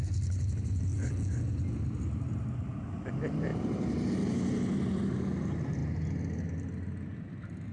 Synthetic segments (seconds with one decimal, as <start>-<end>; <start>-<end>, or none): none